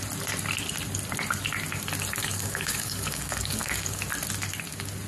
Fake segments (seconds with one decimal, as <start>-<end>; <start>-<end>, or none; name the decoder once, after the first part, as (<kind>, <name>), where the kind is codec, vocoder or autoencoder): 2.2-4.0 (codec, DAC)